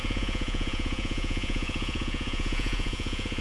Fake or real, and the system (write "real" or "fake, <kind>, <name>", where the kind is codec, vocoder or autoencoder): fake, vocoder, Vocos